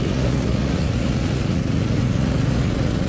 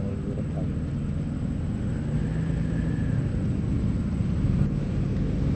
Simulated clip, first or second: first